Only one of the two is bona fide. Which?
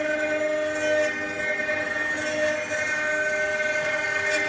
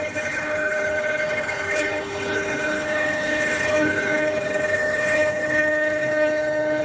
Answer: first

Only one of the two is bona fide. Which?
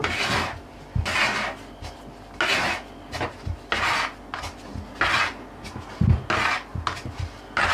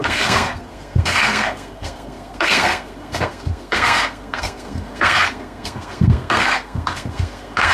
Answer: first